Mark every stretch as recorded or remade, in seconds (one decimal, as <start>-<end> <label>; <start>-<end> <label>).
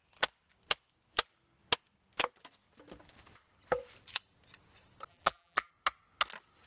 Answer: 0.0-5.1 recorded; 5.1-5.7 remade; 5.7-6.7 recorded